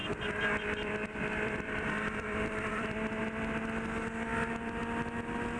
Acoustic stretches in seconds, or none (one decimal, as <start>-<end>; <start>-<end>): 3.2-5.6